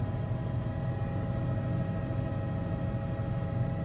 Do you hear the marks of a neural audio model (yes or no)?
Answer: no